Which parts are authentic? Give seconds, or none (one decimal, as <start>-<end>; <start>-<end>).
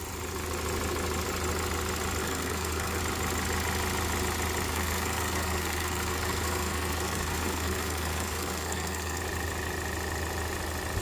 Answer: 0.0-2.2; 3.0-4.7; 9.2-11.0